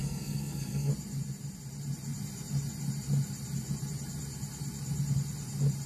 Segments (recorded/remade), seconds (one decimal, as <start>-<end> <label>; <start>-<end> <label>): 0.0-0.9 remade; 0.9-5.9 recorded